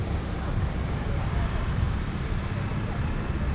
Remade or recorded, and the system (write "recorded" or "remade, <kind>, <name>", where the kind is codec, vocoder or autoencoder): recorded